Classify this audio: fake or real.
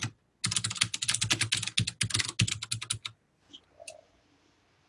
real